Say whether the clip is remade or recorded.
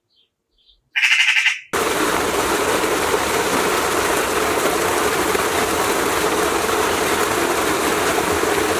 recorded